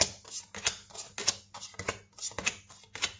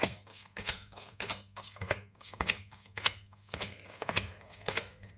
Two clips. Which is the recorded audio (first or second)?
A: first